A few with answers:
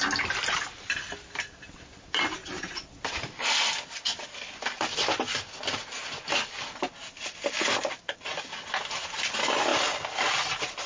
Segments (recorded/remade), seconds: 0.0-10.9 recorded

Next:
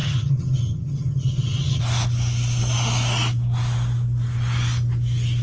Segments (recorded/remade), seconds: 0.0-1.8 remade; 1.8-5.4 recorded

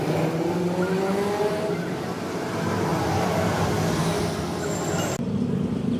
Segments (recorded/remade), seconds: 0.0-6.0 recorded

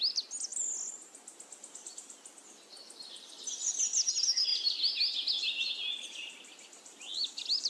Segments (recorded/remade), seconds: 0.0-7.7 recorded

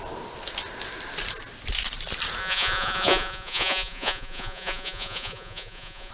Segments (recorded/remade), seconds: 0.0-2.4 recorded; 2.4-6.1 remade

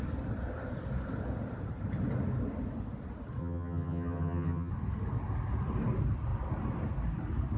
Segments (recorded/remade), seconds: 0.0-3.4 recorded; 3.4-4.7 remade; 4.7-7.6 recorded

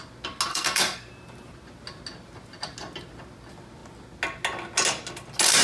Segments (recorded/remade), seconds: 0.0-0.5 recorded; 0.5-1.1 remade; 1.1-5.6 recorded

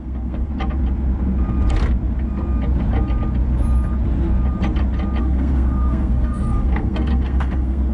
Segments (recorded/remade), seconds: 0.0-0.5 remade; 0.5-5.2 recorded; 5.2-7.9 remade